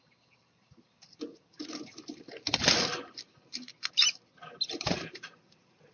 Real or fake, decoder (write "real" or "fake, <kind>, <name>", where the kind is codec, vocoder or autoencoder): real